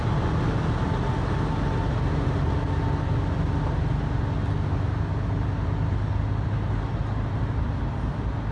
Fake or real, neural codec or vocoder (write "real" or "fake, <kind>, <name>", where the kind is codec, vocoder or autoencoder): real